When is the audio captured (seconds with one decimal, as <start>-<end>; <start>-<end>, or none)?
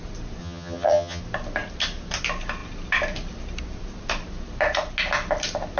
0.0-0.4; 1.2-5.8